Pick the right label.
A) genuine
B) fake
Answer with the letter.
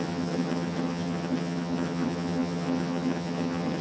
B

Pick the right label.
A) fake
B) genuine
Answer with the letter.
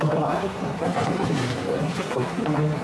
A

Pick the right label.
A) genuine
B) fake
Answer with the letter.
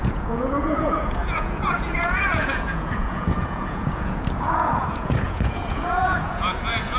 B